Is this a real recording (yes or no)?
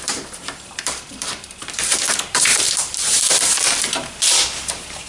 no